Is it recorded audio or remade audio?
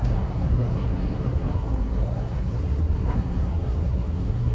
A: remade